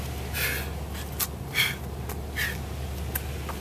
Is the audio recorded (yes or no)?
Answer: yes